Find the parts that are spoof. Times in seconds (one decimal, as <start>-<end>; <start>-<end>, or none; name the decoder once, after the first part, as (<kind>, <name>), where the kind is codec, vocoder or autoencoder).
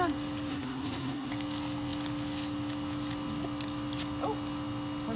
0.5-1.3 (codec, SNAC)